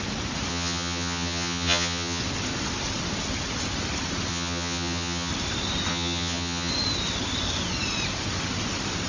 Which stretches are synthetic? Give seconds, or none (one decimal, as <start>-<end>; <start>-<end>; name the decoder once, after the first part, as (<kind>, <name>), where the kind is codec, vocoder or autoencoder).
0.5-2.2 (vocoder, HiFi-GAN); 4.3-5.3; 5.9-6.7